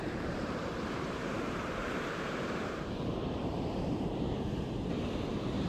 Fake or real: fake